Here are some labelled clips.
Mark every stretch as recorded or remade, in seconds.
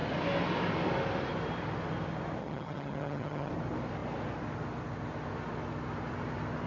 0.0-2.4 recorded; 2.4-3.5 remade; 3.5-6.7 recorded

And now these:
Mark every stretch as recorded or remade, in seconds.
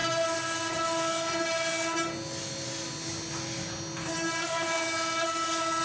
0.0-5.8 recorded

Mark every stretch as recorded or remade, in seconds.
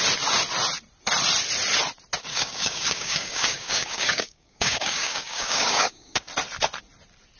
0.0-2.3 recorded; 2.3-6.3 remade; 6.3-7.4 recorded